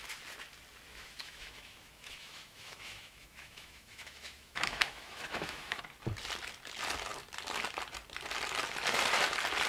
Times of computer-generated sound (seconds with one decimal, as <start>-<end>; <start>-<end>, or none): 0.9-5.8